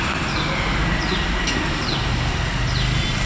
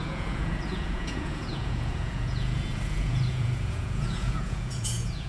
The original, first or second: first